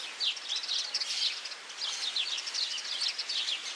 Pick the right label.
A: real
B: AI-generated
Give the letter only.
A